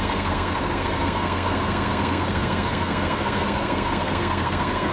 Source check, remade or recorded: remade